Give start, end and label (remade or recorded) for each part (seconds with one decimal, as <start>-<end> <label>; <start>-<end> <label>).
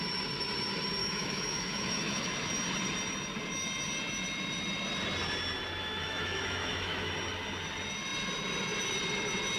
0.0-1.0 recorded; 1.0-2.5 remade; 2.5-5.8 recorded; 5.8-7.1 remade; 7.1-9.6 recorded